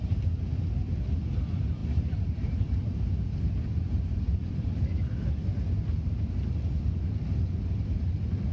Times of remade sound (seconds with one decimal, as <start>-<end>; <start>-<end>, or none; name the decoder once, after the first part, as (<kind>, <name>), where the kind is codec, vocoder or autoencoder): 1.8-5.3 (vocoder, BigVGAN v2)